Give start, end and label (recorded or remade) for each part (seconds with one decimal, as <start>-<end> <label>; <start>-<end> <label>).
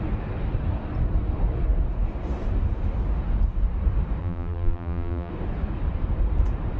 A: 0.0-4.2 recorded; 4.2-5.3 remade; 5.3-6.8 recorded